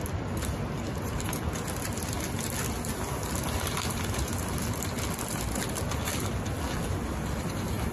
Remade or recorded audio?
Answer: recorded